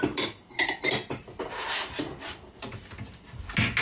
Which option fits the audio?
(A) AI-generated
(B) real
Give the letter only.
B